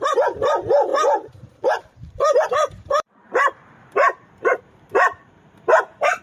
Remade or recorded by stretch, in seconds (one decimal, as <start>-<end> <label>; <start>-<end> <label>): 0.0-6.2 remade